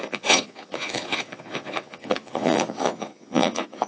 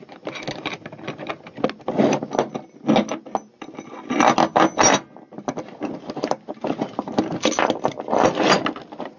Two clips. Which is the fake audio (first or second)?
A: first